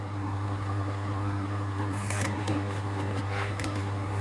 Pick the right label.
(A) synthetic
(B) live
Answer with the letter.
A